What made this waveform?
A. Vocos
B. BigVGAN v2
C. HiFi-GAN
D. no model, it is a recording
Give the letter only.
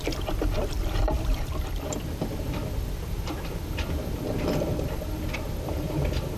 B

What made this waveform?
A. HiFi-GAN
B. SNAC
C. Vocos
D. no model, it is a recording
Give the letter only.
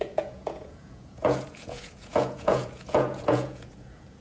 C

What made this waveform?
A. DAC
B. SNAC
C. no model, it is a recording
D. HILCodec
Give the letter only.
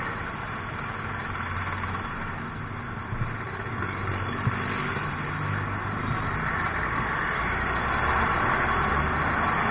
C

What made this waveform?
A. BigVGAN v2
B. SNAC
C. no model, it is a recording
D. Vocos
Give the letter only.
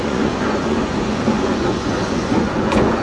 D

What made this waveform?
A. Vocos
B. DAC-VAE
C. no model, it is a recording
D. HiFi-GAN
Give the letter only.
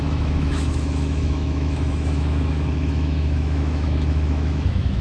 B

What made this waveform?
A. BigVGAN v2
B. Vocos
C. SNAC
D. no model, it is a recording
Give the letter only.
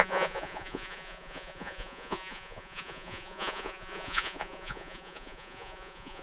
B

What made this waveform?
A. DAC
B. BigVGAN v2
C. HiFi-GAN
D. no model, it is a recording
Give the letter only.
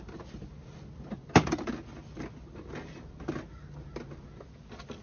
D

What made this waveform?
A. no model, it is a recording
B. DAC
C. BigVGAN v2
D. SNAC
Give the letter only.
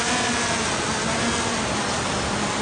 A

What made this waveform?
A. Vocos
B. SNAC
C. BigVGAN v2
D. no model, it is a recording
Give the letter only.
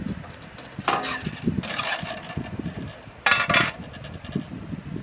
D